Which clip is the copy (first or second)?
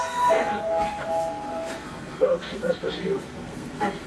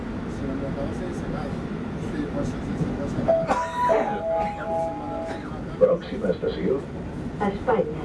first